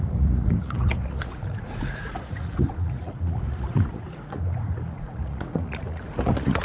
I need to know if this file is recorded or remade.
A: remade